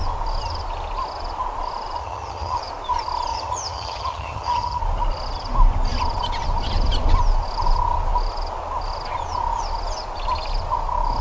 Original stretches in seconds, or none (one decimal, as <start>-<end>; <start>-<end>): 0.0-2.0; 2.6-3.3; 4.8-11.2

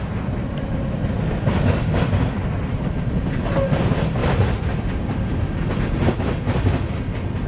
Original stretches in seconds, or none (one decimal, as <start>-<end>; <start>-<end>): 0.0-7.5

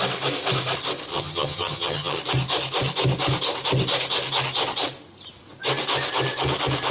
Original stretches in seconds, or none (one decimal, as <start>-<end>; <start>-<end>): 0.0-1.1; 2.2-6.9

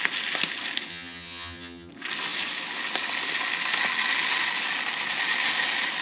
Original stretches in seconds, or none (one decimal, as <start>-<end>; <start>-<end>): 0.0-0.9; 1.9-6.0

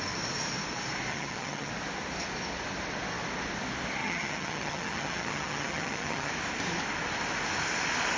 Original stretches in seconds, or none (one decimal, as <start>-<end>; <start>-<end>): 0.0-1.1; 1.7-4.0; 6.3-8.2

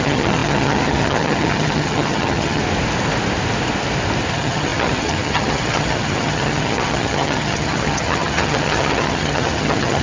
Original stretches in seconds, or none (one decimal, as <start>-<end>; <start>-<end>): 2.6-4.3